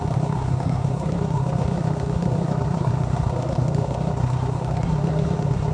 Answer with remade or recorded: remade